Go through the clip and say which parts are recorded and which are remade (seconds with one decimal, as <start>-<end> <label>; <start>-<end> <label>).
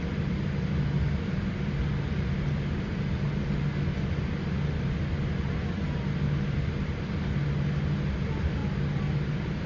0.0-9.7 recorded